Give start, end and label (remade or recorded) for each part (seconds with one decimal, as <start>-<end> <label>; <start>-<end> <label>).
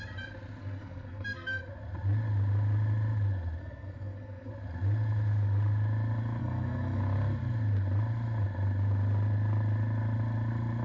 0.0-0.6 recorded; 0.6-1.6 remade; 1.6-3.6 recorded; 3.6-4.5 remade; 4.5-6.4 recorded; 6.4-7.0 remade; 7.0-10.8 recorded